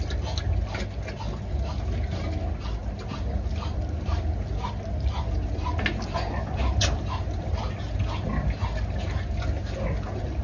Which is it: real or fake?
real